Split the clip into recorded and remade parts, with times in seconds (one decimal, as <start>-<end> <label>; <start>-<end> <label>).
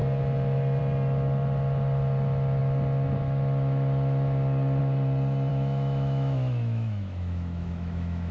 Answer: 0.0-5.5 recorded; 5.5-8.3 remade